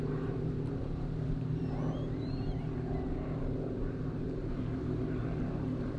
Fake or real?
fake